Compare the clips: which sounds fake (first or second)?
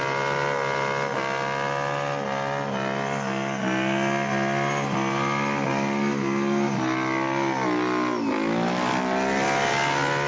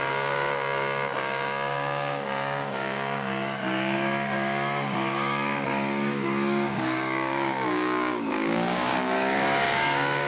second